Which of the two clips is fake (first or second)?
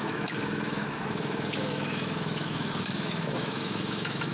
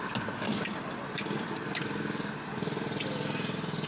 first